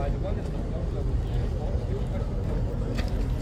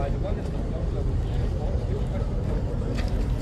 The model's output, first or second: second